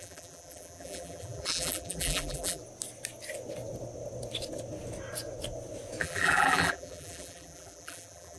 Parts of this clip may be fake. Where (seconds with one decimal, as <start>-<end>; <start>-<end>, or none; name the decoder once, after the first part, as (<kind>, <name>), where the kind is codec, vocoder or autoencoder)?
0.0-2.6 (vocoder, BigVGAN v2); 6.0-8.4